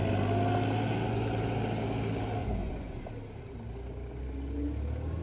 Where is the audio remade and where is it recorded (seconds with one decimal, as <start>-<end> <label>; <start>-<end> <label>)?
0.0-2.4 recorded; 2.4-3.1 remade; 3.1-5.2 recorded